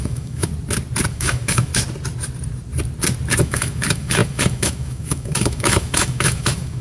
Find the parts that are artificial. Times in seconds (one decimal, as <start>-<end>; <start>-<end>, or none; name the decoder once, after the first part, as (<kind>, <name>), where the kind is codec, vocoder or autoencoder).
0.0-0.5 (autoencoder, DAC-VAE); 1.1-1.7; 3.4-6.8